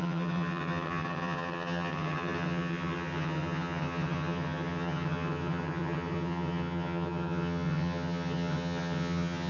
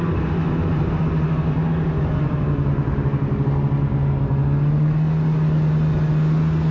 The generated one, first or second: first